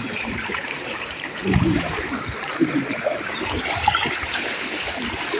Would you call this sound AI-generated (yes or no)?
yes